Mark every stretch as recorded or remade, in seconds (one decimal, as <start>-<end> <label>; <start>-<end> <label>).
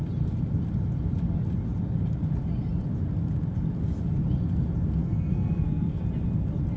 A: 0.0-5.0 recorded; 5.0-6.0 remade; 6.0-6.8 recorded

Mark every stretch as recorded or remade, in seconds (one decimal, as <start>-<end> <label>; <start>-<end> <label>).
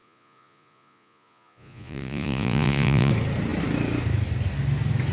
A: 0.0-3.1 remade; 3.1-5.1 recorded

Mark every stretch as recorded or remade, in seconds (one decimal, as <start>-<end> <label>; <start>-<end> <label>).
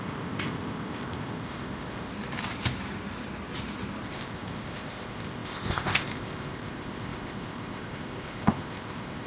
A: 0.0-2.1 remade; 2.1-4.0 recorded; 4.0-9.3 remade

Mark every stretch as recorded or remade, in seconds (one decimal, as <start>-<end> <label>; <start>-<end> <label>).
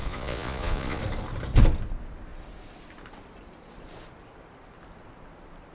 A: 0.0-1.0 remade; 1.0-5.7 recorded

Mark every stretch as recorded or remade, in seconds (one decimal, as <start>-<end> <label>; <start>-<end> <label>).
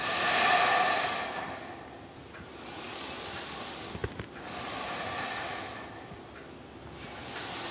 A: 0.0-7.7 recorded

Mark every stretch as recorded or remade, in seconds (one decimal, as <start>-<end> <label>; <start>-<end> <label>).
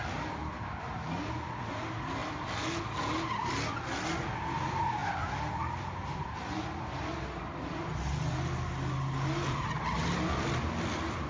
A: 0.0-11.3 recorded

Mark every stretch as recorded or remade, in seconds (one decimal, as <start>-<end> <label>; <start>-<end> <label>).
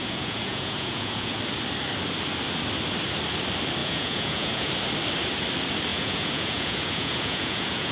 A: 0.0-1.4 remade; 1.4-3.8 recorded; 3.8-4.7 remade; 4.7-5.9 recorded; 5.9-7.9 remade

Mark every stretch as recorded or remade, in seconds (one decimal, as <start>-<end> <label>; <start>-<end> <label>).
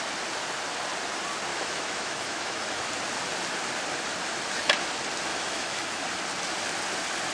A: 0.0-1.5 recorded; 1.5-2.9 remade; 2.9-5.3 recorded; 5.3-6.0 remade; 6.0-7.3 recorded